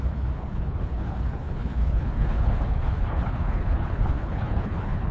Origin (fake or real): fake